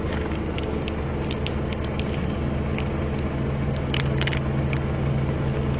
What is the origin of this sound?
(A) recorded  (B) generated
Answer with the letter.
A